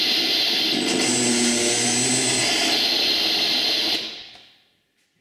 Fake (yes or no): no